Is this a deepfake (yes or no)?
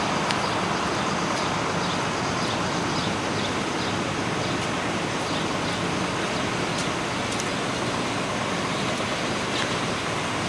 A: no